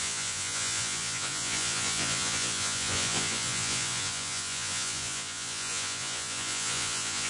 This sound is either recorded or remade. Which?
remade